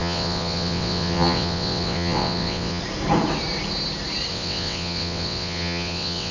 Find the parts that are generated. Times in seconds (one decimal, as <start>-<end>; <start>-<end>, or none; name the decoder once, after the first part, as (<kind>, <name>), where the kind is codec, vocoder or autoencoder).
0.0-2.8 (vocoder, WaveNeXt); 4.3-6.3